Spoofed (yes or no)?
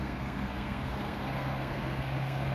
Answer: yes